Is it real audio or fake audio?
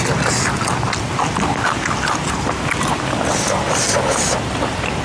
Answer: real